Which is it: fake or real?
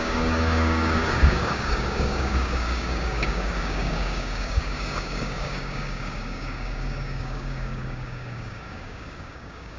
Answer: fake